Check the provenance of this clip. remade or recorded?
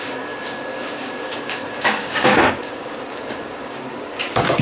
remade